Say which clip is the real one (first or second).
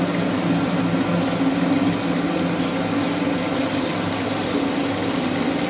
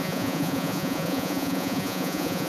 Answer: first